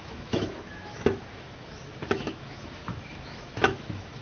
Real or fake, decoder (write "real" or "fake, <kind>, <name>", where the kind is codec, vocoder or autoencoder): fake, autoencoder, DAC-VAE